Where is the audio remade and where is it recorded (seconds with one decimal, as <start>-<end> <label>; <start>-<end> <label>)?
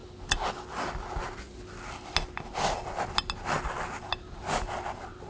0.0-5.3 recorded